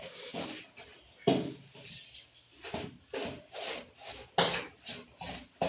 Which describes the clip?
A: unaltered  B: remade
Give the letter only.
A